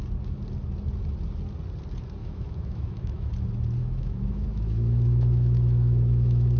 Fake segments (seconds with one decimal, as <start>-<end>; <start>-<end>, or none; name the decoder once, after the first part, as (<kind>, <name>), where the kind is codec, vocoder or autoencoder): 2.2-3.3 (autoencoder, DAC-VAE); 3.8-6.6